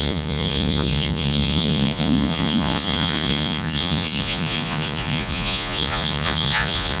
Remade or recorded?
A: remade